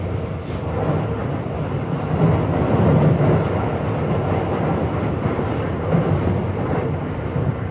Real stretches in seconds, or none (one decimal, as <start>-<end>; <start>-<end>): 0.0-7.7